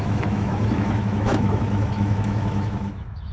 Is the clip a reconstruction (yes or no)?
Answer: yes